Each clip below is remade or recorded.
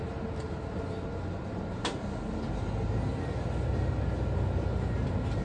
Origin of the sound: recorded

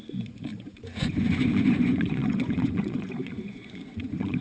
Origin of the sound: remade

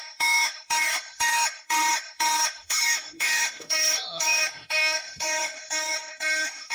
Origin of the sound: remade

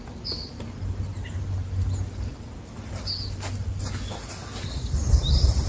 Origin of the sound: recorded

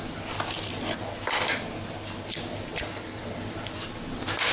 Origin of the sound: recorded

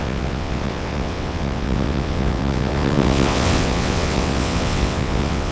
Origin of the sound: remade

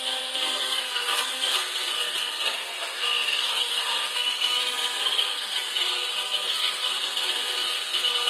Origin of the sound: remade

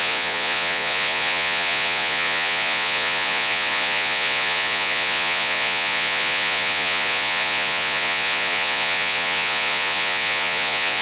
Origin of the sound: remade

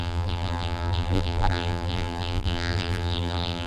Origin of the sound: remade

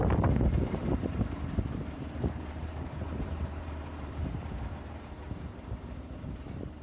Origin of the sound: remade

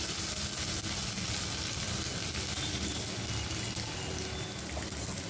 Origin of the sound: recorded